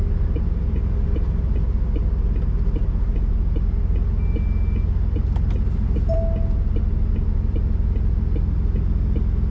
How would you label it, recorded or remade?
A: recorded